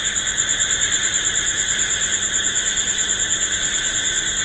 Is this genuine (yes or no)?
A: yes